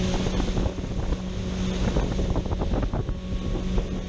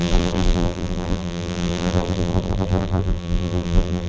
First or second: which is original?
first